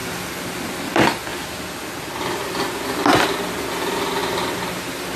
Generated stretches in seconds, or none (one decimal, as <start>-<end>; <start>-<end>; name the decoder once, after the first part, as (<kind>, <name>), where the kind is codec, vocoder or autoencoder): 0.0-1.3 (vocoder, BigVGAN v2); 3.7-4.2; 4.7-5.2

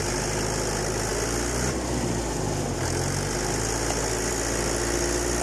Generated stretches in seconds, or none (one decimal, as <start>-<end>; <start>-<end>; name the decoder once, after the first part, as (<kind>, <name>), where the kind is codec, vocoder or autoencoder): none